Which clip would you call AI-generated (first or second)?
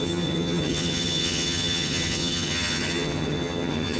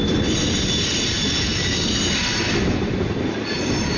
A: first